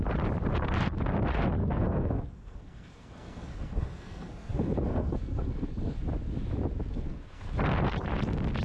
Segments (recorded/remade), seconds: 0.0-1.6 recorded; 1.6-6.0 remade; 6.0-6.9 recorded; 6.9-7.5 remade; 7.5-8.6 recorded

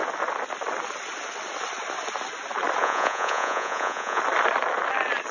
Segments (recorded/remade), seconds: 0.0-2.8 recorded; 2.8-4.2 remade; 4.2-5.3 recorded